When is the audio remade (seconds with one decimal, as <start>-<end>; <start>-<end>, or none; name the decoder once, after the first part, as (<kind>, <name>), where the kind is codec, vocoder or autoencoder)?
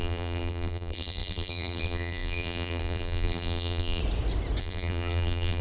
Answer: 0.0-4.0 (vocoder, BigVGAN v2); 4.6-5.6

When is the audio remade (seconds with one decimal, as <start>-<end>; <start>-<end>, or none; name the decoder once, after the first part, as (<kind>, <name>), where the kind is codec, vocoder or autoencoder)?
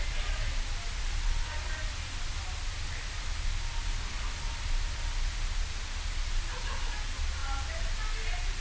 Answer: 7.4-8.0 (vocoder, BigVGAN v2)